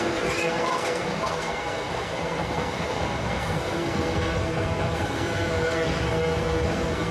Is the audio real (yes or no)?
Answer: no